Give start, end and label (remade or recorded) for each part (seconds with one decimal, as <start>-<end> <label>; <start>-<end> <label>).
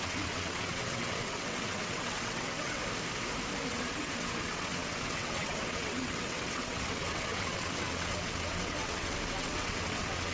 0.0-2.8 remade; 2.8-3.7 recorded; 3.7-10.3 remade